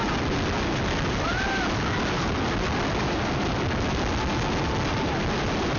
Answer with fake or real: real